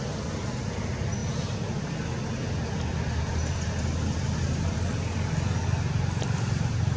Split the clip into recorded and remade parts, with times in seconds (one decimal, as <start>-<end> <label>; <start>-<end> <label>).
0.0-7.0 recorded